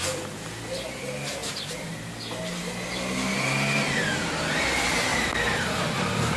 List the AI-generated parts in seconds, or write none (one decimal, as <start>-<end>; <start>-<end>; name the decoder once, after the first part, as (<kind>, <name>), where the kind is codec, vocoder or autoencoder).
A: 5.1-6.4 (vocoder, BigVGAN v2)